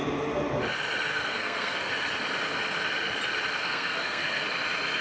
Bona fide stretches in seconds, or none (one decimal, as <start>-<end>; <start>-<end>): 0.0-1.1; 1.9-3.6; 4.4-5.0